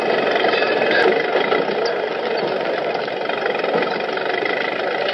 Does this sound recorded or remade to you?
recorded